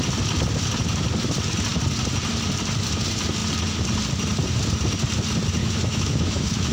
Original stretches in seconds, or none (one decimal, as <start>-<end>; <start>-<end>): 0.0-5.6